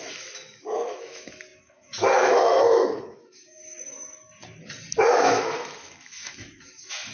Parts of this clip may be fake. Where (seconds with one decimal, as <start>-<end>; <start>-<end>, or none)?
0.0-3.6; 5.1-7.1